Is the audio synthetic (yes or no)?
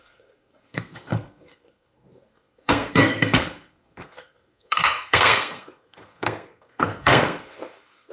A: yes